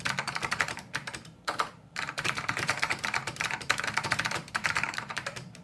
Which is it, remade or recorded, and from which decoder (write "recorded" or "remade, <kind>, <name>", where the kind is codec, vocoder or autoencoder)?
remade, vocoder, BigVGAN v2